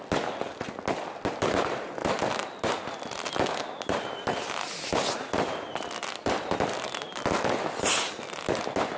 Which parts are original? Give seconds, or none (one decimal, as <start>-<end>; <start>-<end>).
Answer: 0.0-9.0